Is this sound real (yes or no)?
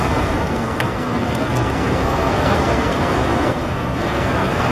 no